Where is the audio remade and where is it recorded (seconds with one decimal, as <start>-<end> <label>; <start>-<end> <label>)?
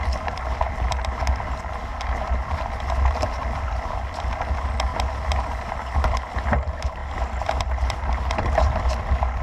0.0-1.9 recorded; 1.9-4.3 remade; 4.3-4.9 recorded; 4.9-5.5 remade; 5.5-7.0 recorded; 7.0-8.9 remade; 8.9-9.4 recorded